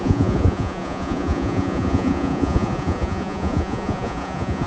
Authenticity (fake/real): fake